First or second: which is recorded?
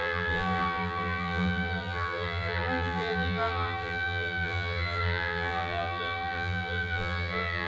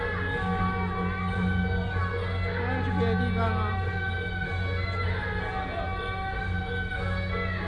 second